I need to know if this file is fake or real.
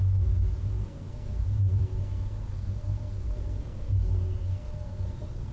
fake